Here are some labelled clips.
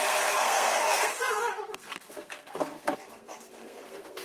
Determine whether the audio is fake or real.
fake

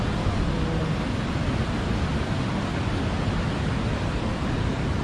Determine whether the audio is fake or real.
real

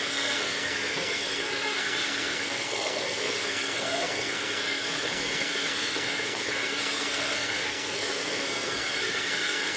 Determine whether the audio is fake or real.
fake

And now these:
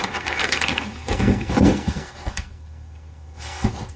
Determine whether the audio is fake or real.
fake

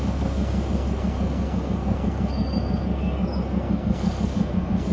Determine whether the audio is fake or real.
fake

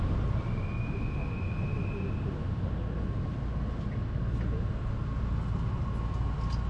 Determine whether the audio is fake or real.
real